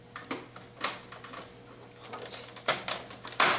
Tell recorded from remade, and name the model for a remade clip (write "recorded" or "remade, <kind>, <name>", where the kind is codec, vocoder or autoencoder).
recorded